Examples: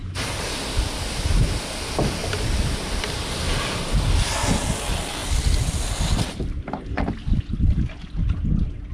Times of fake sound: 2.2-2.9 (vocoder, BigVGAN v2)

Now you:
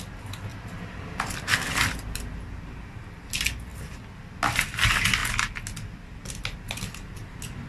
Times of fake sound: 0.5-3.0 (vocoder, BigVGAN v2)

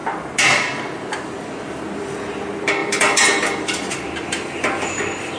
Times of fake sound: 1.7-5.4 (vocoder, BigVGAN v2)

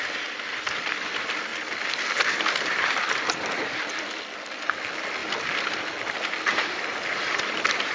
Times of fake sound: 0.0-1.5 (vocoder, BigVGAN v2); 2.0-5.2; 6.5-7.9

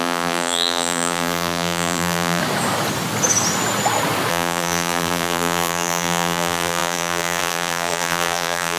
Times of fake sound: 0.0-2.4 (vocoder, BigVGAN v2); 4.3-8.8

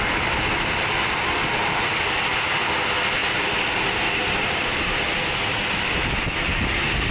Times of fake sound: none

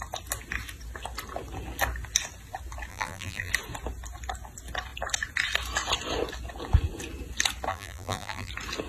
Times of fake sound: 2.9-3.5 (vocoder, BigVGAN v2); 7.7-8.5